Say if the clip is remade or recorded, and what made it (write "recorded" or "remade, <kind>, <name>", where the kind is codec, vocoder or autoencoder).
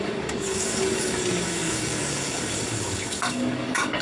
remade, codec, DAC